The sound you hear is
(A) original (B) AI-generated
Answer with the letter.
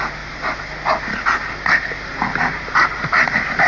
A